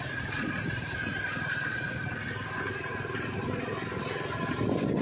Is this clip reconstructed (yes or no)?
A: no